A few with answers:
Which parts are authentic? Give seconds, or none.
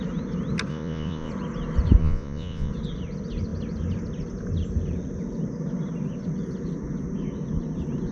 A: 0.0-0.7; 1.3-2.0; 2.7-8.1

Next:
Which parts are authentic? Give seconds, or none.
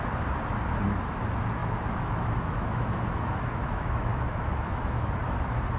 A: 0.0-1.6; 5.1-5.8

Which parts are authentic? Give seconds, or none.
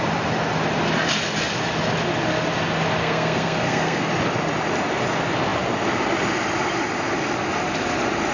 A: 0.0-3.0; 4.1-8.3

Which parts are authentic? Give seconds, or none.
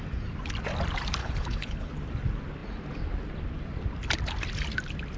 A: 0.0-1.2; 1.9-5.2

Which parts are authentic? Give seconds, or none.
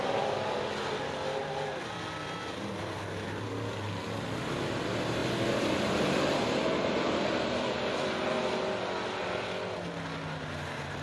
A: 0.0-5.2; 7.6-11.0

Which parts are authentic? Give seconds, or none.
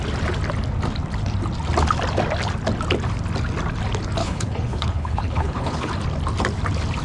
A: 0.0-4.2; 5.9-7.0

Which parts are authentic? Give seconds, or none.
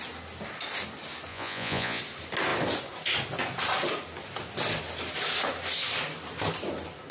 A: 0.0-1.3; 2.0-7.1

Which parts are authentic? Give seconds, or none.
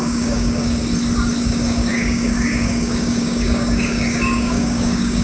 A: 0.8-1.4